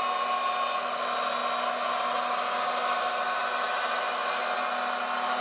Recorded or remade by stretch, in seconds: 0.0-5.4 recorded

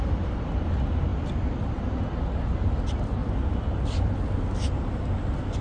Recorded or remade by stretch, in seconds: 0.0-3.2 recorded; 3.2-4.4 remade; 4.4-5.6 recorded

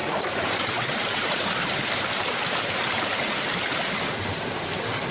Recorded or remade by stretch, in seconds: 0.0-3.1 remade; 3.1-5.1 recorded

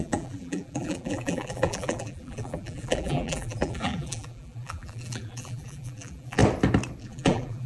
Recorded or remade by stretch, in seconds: 0.0-6.4 remade; 6.4-7.0 recorded; 7.0-7.7 remade

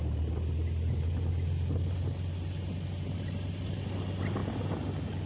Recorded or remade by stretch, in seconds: 0.0-5.3 recorded